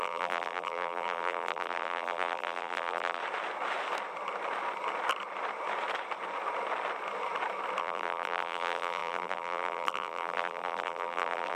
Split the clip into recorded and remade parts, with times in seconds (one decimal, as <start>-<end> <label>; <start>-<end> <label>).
0.0-3.2 remade; 3.2-7.8 recorded; 7.8-11.5 remade